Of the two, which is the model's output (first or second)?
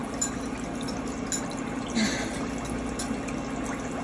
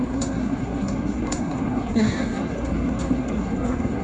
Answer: second